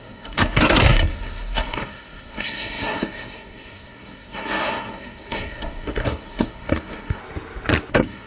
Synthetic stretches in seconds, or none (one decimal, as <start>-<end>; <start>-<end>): 0.0-7.2; 7.9-8.3